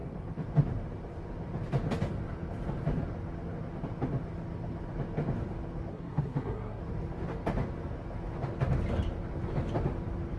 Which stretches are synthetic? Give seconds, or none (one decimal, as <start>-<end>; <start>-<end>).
5.9-6.8